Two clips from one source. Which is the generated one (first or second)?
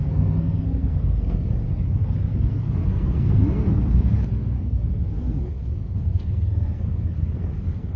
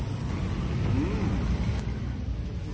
first